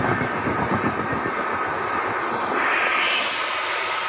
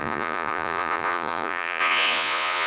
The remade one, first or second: second